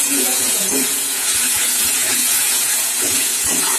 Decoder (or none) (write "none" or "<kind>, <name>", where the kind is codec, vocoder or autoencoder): vocoder, Vocos